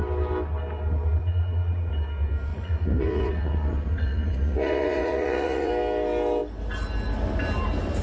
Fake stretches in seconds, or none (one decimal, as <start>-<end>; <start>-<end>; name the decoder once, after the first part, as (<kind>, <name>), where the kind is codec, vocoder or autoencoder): 1.2-1.9 (vocoder, Vocos); 2.5-5.7